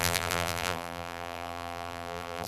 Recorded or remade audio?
remade